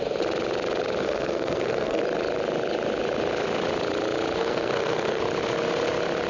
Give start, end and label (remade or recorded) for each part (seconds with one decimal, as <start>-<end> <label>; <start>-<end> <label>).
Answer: 0.0-1.0 recorded; 1.0-2.0 remade; 2.0-4.4 recorded; 4.4-5.2 remade; 5.2-6.3 recorded